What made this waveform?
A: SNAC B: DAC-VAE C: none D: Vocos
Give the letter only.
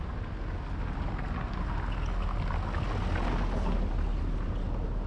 C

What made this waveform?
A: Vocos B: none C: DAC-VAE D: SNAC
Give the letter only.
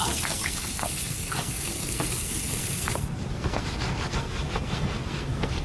D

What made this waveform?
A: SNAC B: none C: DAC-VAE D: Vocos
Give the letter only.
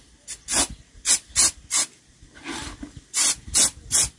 B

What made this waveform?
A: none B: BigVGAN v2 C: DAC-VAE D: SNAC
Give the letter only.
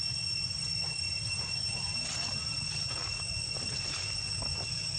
A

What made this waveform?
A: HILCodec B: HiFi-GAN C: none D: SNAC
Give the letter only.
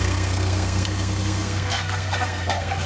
D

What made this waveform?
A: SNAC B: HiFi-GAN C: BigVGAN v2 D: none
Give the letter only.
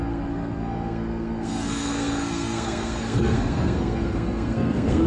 A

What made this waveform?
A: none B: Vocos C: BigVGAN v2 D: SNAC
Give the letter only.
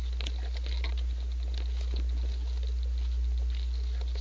A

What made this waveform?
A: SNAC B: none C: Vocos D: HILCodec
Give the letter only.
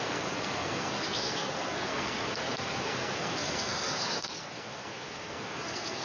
A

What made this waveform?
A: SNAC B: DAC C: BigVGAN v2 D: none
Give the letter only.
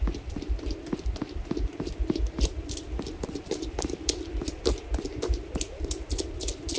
D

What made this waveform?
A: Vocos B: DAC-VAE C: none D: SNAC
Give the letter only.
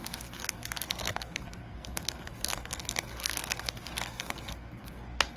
D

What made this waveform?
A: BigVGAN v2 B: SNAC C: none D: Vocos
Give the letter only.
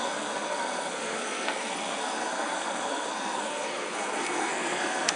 B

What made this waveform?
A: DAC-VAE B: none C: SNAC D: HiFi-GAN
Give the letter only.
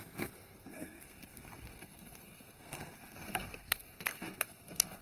C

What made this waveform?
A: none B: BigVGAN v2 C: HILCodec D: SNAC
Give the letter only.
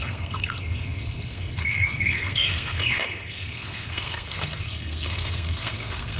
D